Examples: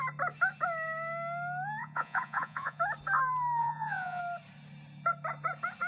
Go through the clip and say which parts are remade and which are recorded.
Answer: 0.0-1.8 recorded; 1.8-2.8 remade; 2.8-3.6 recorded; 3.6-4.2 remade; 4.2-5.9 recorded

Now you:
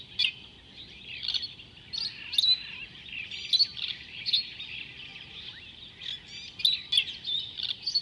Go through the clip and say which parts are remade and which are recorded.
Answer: 0.0-8.0 recorded

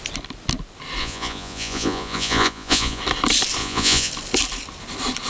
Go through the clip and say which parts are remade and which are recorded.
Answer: 0.0-1.0 recorded; 1.0-3.0 remade; 3.0-3.6 recorded; 3.6-4.1 remade; 4.1-5.3 recorded

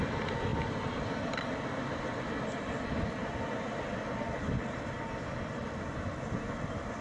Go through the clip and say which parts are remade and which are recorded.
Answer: 0.0-7.0 recorded

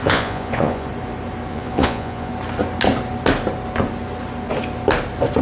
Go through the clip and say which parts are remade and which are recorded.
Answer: 0.0-0.9 remade; 0.9-1.5 recorded; 1.5-2.3 remade; 2.3-5.4 recorded

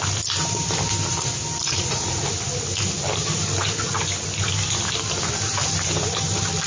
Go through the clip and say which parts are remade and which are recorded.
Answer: 0.0-1.6 recorded; 1.6-2.3 remade; 2.3-6.7 recorded